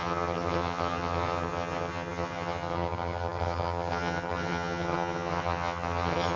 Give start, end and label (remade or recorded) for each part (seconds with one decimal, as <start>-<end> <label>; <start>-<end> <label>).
0.0-6.4 remade